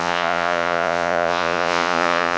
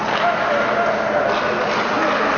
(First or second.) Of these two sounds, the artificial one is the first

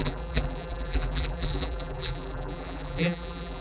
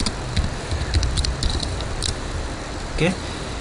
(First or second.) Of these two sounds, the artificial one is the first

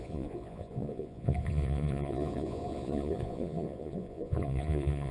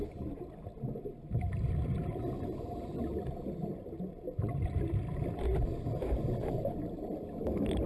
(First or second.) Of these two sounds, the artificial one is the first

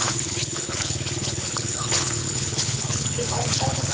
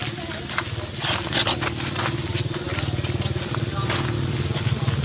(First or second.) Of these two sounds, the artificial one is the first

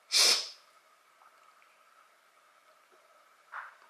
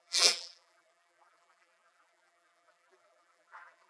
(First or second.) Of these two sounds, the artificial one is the second